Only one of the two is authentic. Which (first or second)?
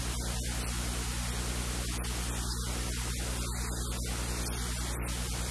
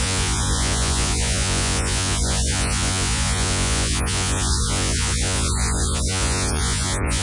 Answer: first